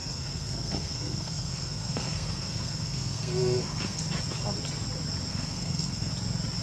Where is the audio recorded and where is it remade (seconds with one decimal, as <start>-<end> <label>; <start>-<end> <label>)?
0.0-4.0 remade; 4.0-5.3 recorded; 5.3-6.1 remade; 6.1-6.6 recorded